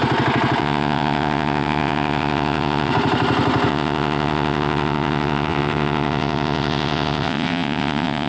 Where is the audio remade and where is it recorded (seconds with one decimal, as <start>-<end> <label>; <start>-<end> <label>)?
0.0-0.6 recorded; 0.6-2.9 remade; 2.9-3.7 recorded; 3.7-8.3 remade